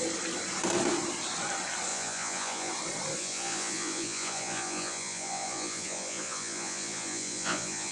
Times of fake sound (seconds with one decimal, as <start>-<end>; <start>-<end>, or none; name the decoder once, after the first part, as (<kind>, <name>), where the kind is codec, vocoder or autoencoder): 1.9-2.7 (vocoder, Vocos); 3.2-7.9